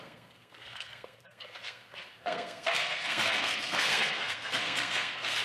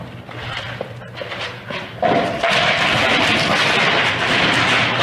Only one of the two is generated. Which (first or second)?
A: first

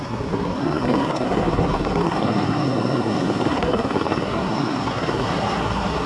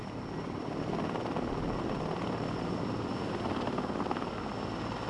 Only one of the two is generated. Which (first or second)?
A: first